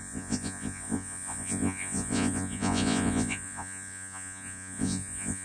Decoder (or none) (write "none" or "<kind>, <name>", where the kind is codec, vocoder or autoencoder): vocoder, Vocos